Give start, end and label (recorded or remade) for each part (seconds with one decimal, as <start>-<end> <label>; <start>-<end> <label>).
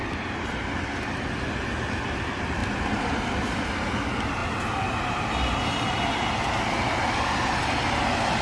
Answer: 0.0-8.4 recorded